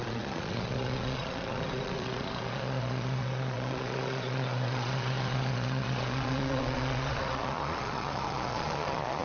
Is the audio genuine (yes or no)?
no